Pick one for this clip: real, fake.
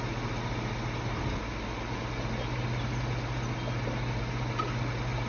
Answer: real